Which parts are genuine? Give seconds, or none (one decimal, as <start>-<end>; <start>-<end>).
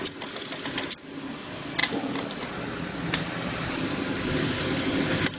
0.0-1.8; 5.0-5.4